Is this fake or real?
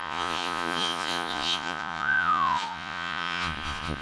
fake